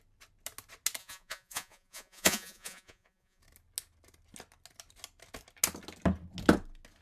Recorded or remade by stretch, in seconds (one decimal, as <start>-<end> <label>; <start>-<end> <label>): 0.0-1.0 recorded; 1.0-3.4 remade; 3.4-7.0 recorded